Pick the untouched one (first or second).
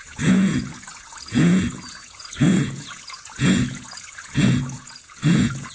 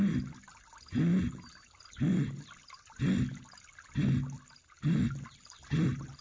second